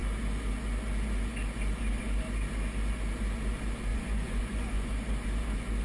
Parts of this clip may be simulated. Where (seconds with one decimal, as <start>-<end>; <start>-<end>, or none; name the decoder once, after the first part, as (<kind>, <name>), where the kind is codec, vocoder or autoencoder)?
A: 3.9-4.9 (vocoder, Vocos)